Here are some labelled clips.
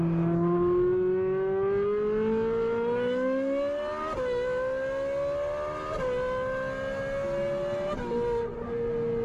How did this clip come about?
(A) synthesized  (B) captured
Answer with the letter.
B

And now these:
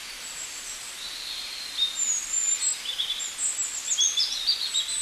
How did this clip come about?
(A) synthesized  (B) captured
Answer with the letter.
B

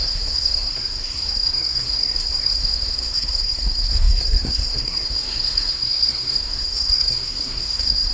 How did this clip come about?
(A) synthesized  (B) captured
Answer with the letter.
A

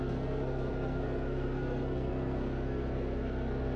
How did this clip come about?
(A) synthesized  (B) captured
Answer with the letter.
A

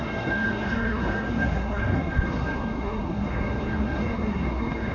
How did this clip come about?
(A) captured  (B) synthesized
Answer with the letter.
B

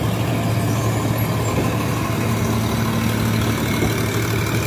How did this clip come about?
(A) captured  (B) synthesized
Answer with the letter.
A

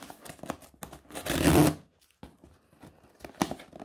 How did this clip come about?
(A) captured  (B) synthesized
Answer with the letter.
A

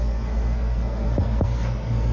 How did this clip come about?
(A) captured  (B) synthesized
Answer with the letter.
B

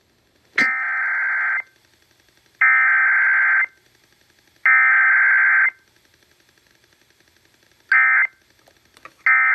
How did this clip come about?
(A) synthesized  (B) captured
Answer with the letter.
B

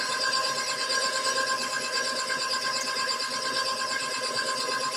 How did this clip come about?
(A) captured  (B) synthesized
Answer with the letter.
A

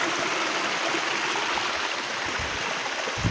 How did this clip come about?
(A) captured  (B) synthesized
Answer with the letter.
A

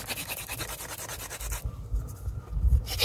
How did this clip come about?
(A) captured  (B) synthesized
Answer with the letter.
A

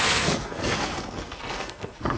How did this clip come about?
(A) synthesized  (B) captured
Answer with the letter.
A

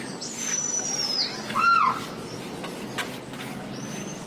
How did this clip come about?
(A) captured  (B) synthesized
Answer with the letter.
A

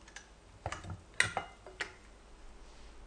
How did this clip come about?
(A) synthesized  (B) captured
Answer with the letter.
B